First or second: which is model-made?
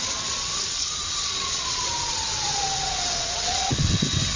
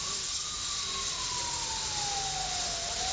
first